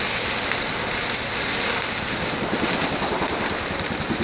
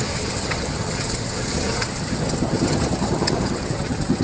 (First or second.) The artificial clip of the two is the second